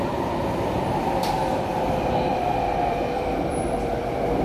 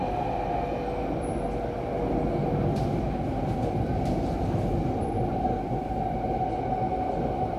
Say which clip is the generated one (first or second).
first